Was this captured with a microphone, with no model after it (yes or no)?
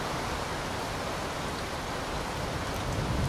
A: yes